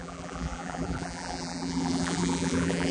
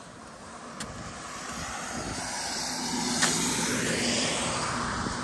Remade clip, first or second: first